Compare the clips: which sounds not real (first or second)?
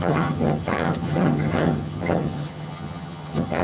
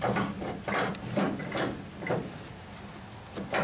first